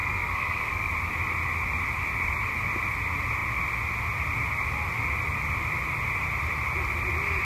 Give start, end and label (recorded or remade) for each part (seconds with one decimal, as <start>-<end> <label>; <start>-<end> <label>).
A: 0.0-0.9 remade; 0.9-7.4 recorded

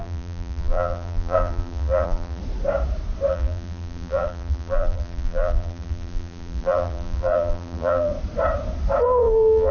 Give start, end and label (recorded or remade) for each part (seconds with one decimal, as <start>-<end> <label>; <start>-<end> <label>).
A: 0.0-2.4 remade; 2.4-3.3 recorded; 3.3-8.1 remade; 8.1-9.0 recorded; 9.0-9.7 remade

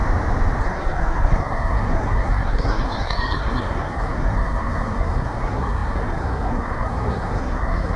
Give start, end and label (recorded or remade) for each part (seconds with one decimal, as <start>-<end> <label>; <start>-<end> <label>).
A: 0.0-0.6 recorded; 0.6-8.0 remade